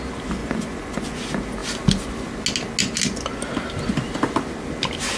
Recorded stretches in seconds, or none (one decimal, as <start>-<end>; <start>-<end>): 0.0-0.4; 1.2-5.2